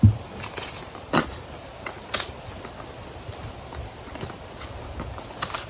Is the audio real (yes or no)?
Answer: yes